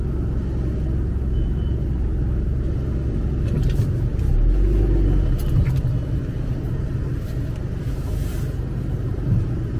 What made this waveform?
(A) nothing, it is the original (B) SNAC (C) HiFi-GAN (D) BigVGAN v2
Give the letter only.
A